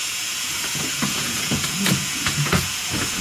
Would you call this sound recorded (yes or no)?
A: no